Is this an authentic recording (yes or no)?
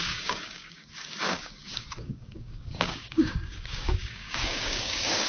no